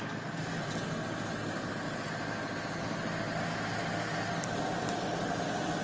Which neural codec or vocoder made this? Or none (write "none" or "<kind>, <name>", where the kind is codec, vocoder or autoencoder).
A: none